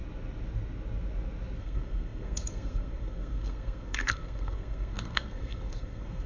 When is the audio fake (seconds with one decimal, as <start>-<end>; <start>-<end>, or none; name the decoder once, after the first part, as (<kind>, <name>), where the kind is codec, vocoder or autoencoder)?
1.6-6.3 (codec, SNAC)

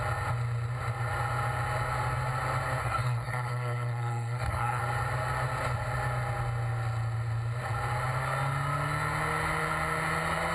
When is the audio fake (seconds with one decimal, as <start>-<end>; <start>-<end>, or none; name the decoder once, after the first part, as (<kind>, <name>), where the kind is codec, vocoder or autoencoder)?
2.8-4.8 (codec, SNAC)

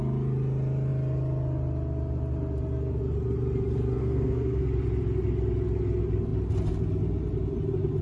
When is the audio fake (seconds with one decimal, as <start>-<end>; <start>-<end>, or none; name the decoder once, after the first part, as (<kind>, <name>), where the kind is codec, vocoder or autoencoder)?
4.0-4.6 (codec, SNAC)